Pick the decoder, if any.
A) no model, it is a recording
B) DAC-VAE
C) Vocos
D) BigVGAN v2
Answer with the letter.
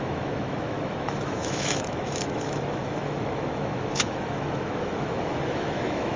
B